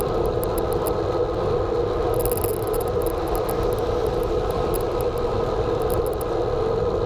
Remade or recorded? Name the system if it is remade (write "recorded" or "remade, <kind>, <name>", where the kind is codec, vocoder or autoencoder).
recorded